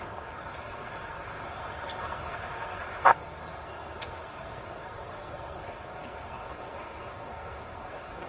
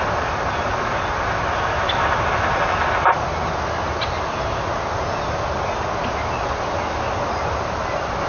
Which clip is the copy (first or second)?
first